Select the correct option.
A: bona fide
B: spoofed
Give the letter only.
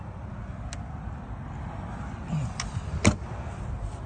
A